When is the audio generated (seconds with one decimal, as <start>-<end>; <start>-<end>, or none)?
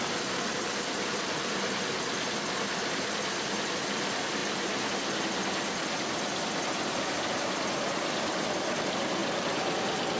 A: none